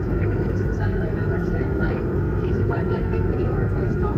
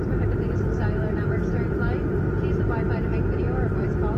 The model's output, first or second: first